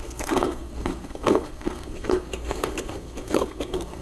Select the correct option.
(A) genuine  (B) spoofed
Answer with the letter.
B